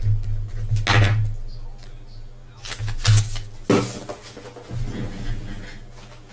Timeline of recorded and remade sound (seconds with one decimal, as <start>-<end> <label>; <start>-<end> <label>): 0.0-6.3 recorded